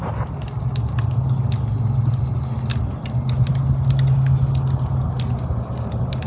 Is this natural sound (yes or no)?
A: yes